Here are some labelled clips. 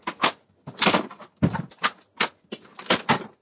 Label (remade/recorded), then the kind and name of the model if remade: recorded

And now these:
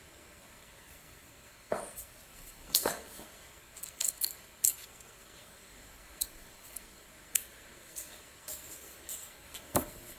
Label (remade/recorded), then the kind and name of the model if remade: remade, codec, SNAC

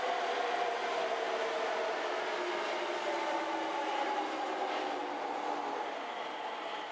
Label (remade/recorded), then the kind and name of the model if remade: recorded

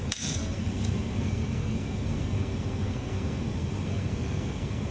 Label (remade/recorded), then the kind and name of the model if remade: remade, codec, SNAC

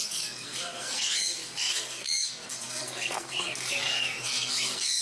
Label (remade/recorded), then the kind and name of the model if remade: remade, codec, SNAC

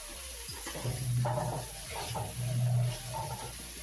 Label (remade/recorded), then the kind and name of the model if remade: recorded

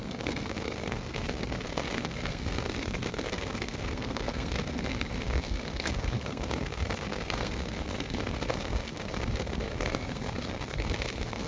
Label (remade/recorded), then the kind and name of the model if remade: remade, codec, SNAC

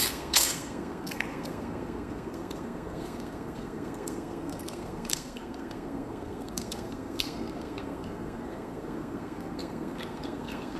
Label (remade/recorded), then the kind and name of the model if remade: remade, codec, SNAC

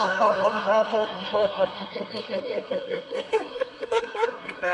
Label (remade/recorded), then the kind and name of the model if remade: remade, codec, SNAC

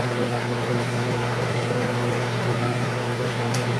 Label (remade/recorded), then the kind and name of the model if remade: remade, codec, SNAC